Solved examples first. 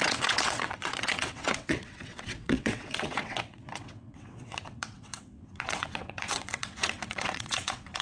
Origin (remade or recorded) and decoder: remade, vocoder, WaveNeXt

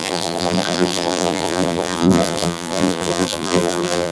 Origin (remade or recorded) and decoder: remade, vocoder, BigVGAN v2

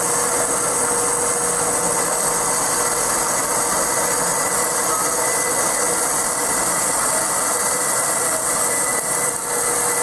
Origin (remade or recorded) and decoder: recorded